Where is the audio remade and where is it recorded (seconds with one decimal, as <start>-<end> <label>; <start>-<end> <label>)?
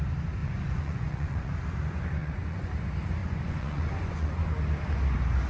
0.0-0.4 recorded; 0.4-1.5 remade; 1.5-2.2 recorded; 2.2-2.7 remade; 2.7-3.2 recorded; 3.2-4.3 remade; 4.3-5.5 recorded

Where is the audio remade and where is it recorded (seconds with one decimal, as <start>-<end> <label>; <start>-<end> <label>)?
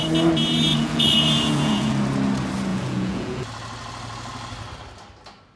0.0-0.7 recorded; 0.7-1.9 remade; 1.9-2.7 recorded; 2.7-3.4 remade; 3.4-5.6 recorded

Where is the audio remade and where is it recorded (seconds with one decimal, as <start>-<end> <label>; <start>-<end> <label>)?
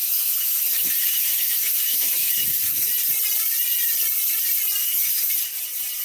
0.0-2.9 remade; 2.9-4.8 recorded; 4.8-5.3 remade; 5.3-6.0 recorded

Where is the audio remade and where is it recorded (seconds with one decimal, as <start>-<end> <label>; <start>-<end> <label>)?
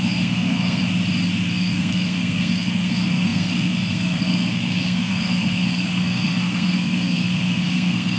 0.0-0.8 remade; 0.8-1.5 recorded; 1.5-8.2 remade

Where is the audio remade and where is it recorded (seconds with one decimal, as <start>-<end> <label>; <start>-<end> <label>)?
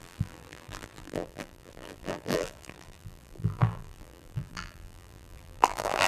0.0-6.1 remade